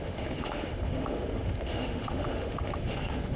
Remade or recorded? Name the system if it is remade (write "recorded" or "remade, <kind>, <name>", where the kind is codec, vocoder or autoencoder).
remade, autoencoder, DAC-VAE